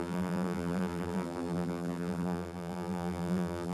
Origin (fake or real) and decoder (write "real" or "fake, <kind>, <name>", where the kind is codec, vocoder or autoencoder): fake, vocoder, BigVGAN v2